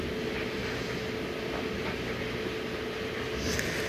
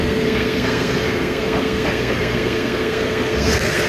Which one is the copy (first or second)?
second